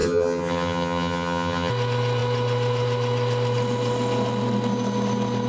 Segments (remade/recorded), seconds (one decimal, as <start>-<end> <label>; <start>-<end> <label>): 0.0-1.7 remade; 1.7-5.5 recorded

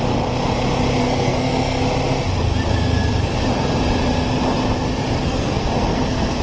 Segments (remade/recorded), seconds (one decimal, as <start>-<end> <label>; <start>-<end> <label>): 0.0-1.0 recorded; 1.0-1.8 remade; 1.8-5.2 recorded; 5.2-6.4 remade

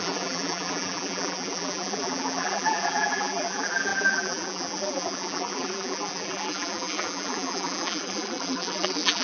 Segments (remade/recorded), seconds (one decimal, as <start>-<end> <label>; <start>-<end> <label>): 0.0-9.2 remade